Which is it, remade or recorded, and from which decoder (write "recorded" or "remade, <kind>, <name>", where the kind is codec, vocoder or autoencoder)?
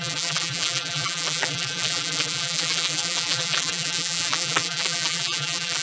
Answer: remade, vocoder, BigVGAN v2